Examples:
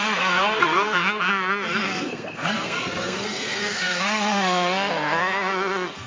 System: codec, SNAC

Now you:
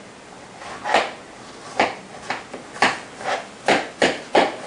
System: none